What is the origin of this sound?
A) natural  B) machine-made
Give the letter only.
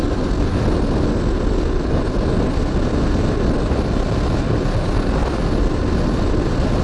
A